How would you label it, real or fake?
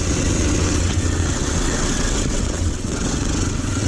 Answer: fake